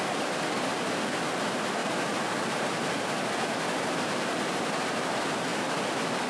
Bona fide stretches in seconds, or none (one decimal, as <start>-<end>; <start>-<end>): 0.0-6.3